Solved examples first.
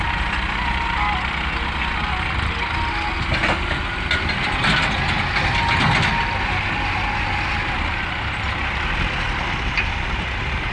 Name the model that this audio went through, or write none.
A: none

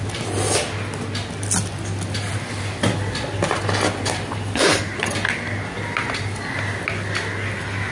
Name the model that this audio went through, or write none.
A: none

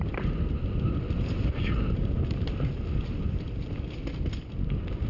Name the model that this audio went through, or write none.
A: none